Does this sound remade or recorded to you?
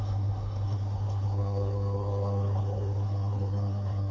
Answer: remade